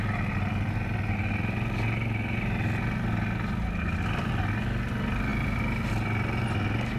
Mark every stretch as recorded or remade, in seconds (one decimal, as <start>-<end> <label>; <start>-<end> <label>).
0.0-7.0 recorded